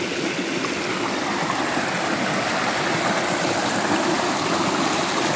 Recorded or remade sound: recorded